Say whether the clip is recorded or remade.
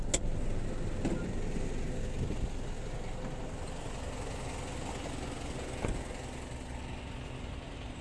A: recorded